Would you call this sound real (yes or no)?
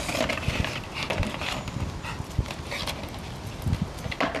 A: yes